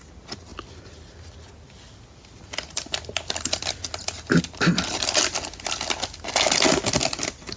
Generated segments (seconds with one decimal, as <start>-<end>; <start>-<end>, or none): none

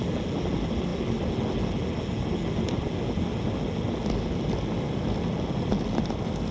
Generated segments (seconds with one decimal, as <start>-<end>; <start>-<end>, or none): none

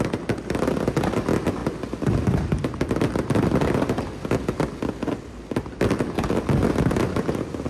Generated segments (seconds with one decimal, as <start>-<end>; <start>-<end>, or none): none

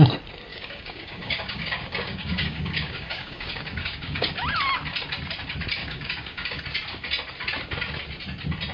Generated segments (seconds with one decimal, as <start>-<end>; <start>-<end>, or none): 0.5-4.3; 5.8-6.6

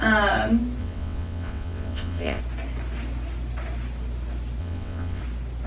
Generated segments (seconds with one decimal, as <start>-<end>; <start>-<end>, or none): 0.8-2.4; 4.6-5.2

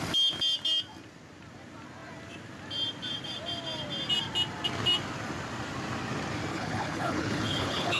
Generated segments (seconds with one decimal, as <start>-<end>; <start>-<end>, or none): 6.5-8.0